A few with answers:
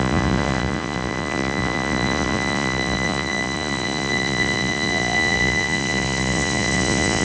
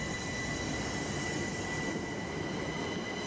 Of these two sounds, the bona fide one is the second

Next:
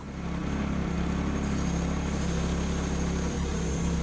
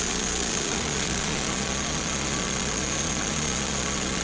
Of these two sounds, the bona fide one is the first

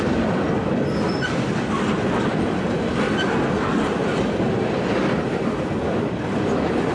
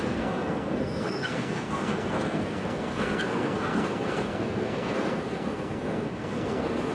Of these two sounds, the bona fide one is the first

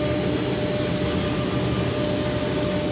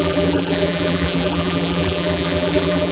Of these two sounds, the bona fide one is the first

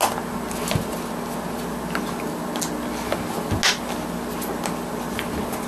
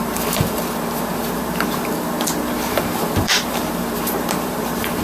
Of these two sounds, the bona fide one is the first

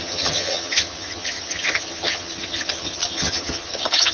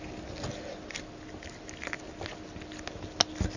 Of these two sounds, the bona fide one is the second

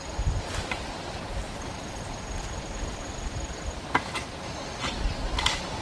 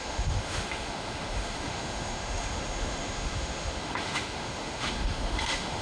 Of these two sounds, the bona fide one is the first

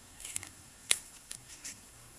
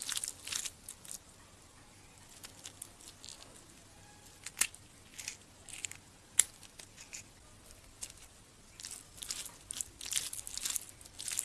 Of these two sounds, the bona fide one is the second